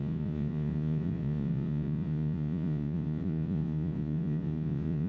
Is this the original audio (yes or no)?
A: no